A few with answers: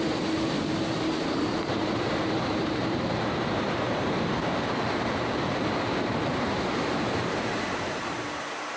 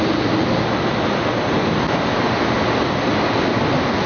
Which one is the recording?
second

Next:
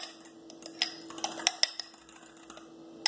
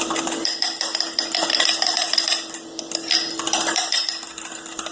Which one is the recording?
first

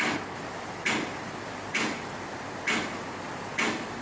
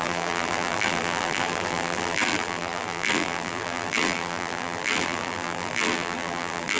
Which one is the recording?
first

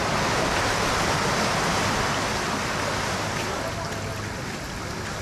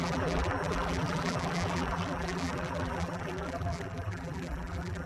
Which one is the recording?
first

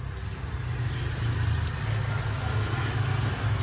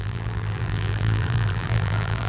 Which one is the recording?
first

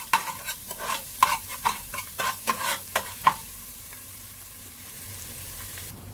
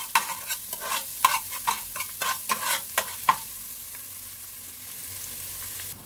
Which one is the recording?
second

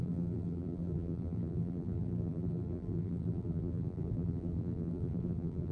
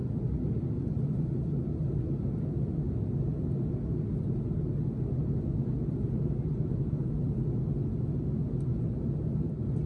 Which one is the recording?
second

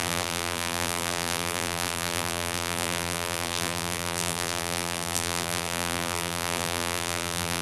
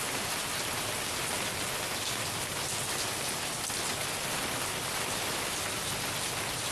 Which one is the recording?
second